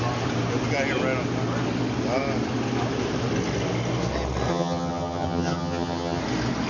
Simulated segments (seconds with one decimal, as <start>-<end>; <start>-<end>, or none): 4.5-6.2